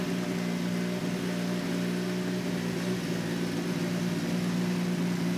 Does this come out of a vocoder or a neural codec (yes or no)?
no